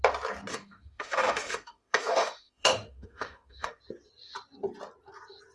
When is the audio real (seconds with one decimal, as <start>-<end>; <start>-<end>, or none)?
0.0-0.5; 3.8-5.5